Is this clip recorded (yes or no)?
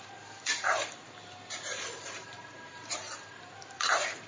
no